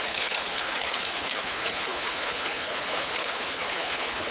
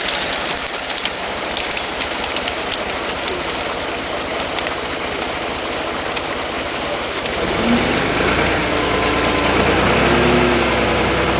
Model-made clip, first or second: first